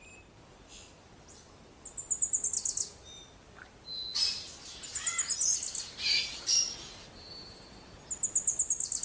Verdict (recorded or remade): recorded